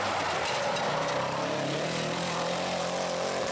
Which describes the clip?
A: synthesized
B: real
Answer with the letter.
B